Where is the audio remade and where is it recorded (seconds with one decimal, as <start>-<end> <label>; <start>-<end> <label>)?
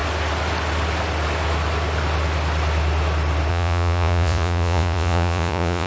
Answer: 0.0-3.5 recorded; 3.5-5.9 remade